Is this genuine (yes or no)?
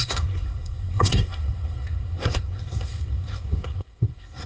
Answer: no